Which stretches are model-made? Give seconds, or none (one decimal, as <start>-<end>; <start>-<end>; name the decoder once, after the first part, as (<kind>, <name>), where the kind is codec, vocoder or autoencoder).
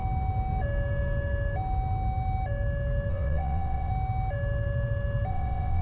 3.1-3.9 (vocoder, WaveNeXt); 5.3-5.8